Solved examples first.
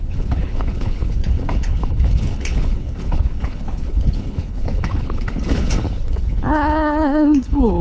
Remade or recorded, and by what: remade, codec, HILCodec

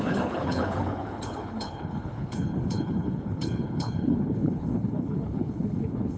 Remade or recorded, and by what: remade, codec, HILCodec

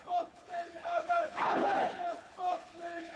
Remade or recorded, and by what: remade, codec, HILCodec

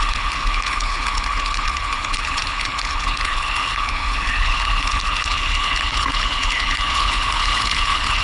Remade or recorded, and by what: remade, codec, HILCodec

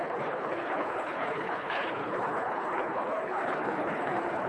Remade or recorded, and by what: remade, codec, HILCodec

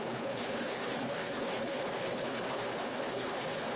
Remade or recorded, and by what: remade, codec, HILCodec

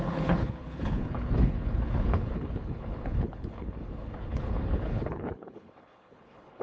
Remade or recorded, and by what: remade, codec, HILCodec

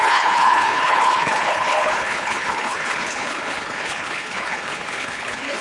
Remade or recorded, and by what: remade, codec, HILCodec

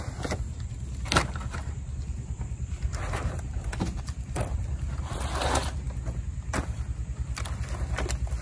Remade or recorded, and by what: recorded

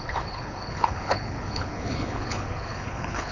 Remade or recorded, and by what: remade, codec, HILCodec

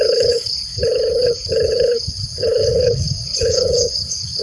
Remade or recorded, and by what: remade, codec, HILCodec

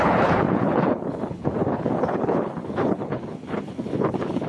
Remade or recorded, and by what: remade, codec, HILCodec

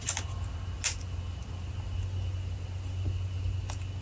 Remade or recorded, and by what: recorded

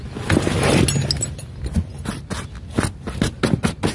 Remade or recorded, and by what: recorded